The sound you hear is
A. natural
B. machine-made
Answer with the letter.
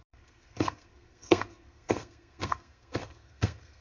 B